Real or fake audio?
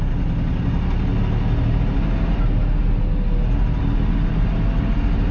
real